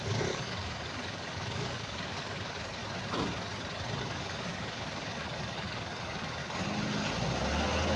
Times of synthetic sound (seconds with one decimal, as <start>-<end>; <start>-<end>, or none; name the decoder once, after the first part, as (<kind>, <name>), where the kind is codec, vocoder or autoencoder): 0.0-2.8 (codec, DAC); 4.0-6.4